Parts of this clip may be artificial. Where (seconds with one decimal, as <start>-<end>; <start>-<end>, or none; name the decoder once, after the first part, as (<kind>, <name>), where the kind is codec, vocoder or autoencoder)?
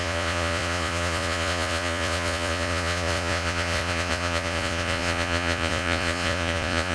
0.0-6.9 (vocoder, Vocos)